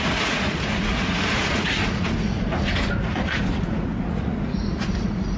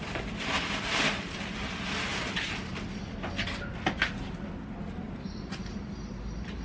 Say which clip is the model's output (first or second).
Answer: first